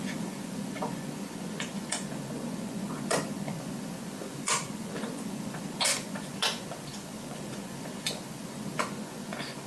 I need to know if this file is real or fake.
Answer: fake